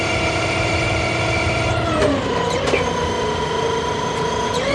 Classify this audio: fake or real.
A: real